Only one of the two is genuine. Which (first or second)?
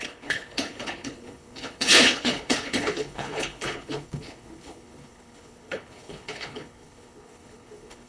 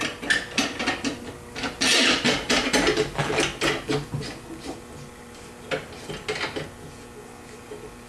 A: second